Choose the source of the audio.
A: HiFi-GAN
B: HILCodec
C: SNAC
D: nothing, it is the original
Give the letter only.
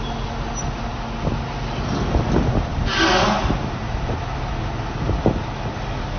D